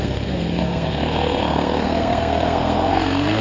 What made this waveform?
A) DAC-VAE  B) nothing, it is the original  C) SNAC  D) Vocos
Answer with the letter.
C